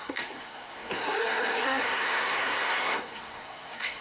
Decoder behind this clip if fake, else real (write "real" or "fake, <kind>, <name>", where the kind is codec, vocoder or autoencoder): fake, codec, SNAC